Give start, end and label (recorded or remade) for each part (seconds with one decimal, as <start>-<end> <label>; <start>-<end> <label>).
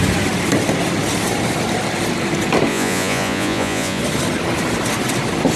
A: 0.0-2.7 recorded; 2.7-4.0 remade; 4.0-5.6 recorded